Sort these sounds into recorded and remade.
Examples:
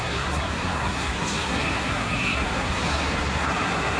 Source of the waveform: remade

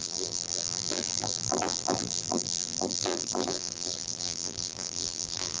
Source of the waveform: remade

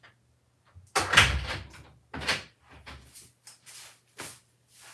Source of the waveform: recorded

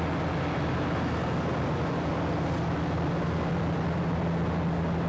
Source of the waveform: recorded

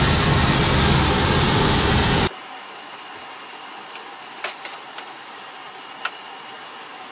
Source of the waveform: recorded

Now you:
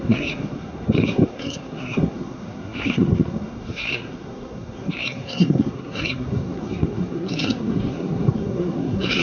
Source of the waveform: remade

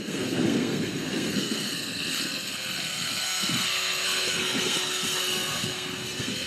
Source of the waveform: remade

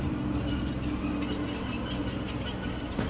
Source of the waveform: recorded